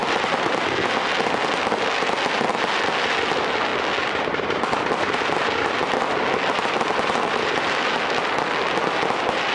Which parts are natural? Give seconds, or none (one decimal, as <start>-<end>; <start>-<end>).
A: 0.0-9.5